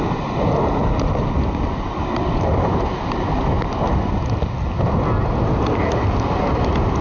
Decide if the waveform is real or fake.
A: real